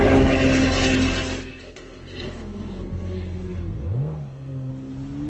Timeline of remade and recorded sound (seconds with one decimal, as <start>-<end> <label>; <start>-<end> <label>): 0.0-1.5 recorded; 1.5-4.7 remade; 4.7-5.3 recorded